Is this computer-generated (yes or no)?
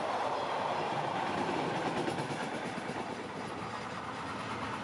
no